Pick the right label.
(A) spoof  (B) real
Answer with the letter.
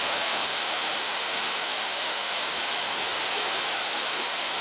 A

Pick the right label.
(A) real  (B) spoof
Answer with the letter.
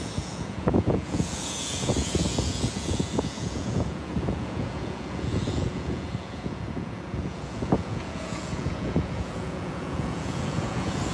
B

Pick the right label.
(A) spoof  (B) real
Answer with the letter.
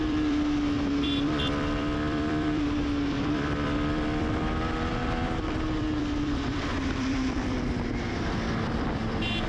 A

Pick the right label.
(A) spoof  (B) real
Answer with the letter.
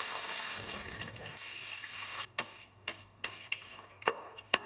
A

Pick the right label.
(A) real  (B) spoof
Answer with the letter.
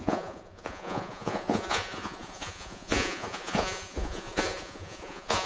B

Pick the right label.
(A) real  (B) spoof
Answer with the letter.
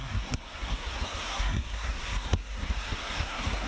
B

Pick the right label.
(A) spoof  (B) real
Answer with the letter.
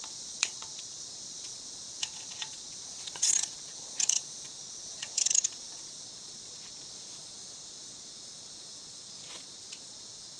A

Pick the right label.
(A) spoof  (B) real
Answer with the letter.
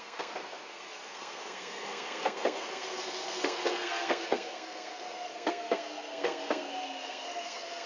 A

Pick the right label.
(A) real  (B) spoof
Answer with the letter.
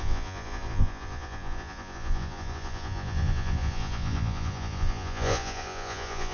B